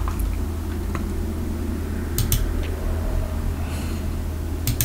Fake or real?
real